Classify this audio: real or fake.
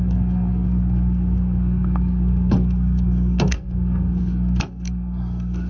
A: fake